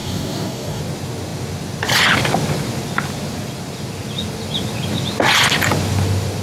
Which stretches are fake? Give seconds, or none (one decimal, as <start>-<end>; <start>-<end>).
0.0-0.8